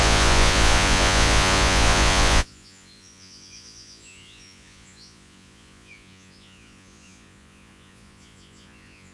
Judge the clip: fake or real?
fake